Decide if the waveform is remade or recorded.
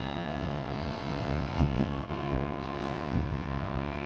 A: remade